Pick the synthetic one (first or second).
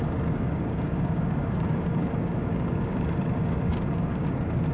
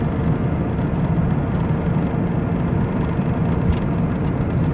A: first